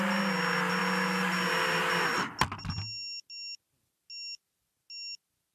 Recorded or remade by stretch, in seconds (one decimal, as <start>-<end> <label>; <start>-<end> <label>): 0.0-5.5 recorded

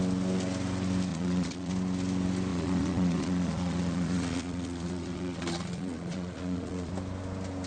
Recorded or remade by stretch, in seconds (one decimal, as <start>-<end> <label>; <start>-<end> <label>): 0.0-1.1 recorded; 1.1-1.7 remade; 1.7-2.5 recorded; 2.5-6.9 remade; 6.9-7.7 recorded

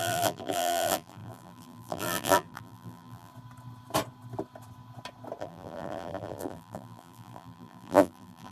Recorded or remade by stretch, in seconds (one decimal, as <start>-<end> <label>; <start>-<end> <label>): 0.0-3.3 remade; 3.3-5.4 recorded; 5.4-8.5 remade

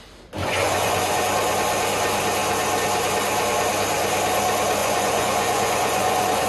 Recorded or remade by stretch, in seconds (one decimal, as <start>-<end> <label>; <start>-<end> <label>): 0.0-0.4 recorded; 0.4-1.2 remade; 1.2-4.8 recorded; 4.8-6.5 remade

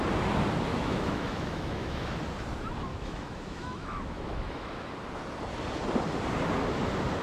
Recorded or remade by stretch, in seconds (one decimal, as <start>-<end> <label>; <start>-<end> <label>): 0.0-0.7 recorded; 0.7-2.2 remade; 2.2-2.9 recorded; 2.9-4.9 remade; 4.9-7.2 recorded

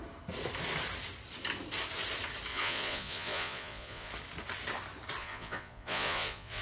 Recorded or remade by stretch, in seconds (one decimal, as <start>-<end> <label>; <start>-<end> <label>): 0.0-2.5 recorded; 2.5-4.1 remade; 4.1-5.2 recorded; 5.2-6.6 remade

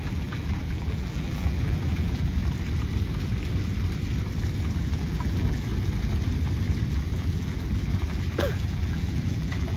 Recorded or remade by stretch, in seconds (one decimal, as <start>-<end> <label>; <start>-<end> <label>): 0.0-2.4 remade; 2.4-4.8 recorded; 4.8-5.7 remade; 5.7-6.9 recorded; 6.9-9.8 remade